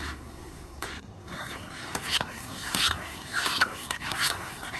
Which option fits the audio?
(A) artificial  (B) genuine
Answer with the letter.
A